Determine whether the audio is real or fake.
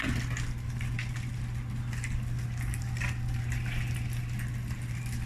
real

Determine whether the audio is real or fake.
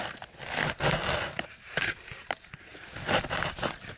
fake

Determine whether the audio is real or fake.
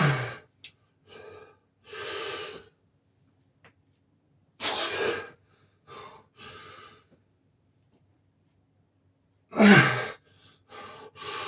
real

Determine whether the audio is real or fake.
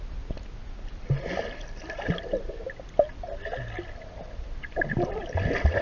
real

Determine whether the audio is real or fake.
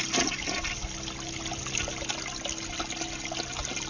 real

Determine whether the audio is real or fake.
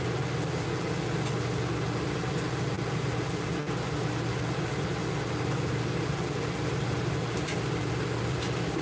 real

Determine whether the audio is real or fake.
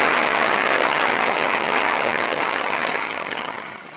fake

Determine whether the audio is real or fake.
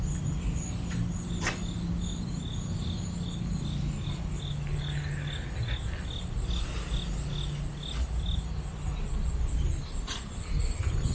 real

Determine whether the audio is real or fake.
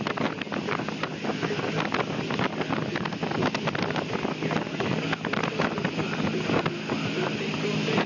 real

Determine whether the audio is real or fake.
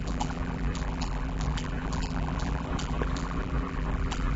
fake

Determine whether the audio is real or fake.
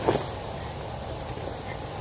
fake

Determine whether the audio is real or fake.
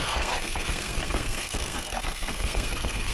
fake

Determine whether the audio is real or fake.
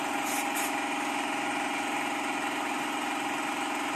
real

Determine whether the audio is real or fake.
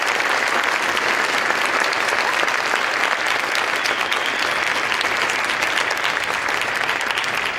real